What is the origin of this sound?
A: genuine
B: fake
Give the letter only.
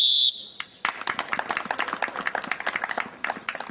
A